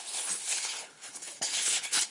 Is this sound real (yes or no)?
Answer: no